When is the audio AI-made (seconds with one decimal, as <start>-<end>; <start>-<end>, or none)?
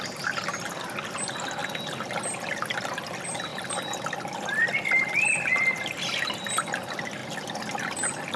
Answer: none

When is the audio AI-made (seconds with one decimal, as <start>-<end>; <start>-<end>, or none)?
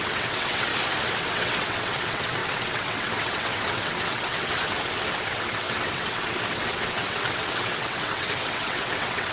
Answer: 0.0-0.7; 1.2-9.3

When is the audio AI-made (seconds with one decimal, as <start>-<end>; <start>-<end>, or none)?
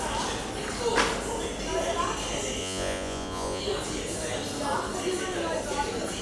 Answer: 2.6-3.6